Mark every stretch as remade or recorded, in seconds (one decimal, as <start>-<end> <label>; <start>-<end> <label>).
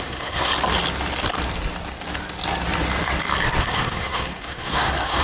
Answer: 0.0-0.5 remade; 0.5-3.6 recorded; 3.6-5.2 remade